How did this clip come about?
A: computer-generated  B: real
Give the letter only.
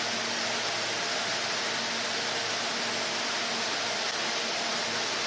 B